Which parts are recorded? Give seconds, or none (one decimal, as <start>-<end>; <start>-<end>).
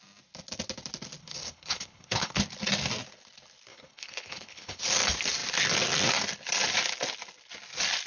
0.0-1.2; 2.4-3.7; 4.8-8.1